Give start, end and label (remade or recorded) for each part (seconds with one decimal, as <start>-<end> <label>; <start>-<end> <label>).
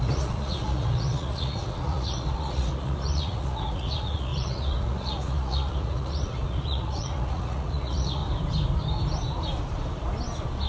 0.0-8.2 remade; 8.2-10.7 recorded